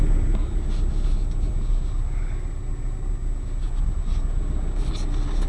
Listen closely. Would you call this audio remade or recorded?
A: recorded